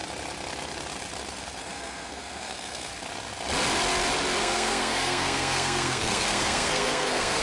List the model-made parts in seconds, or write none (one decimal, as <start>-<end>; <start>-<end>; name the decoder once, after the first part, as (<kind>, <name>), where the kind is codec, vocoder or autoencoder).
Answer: 1.6-2.9 (codec, SNAC); 4.4-7.4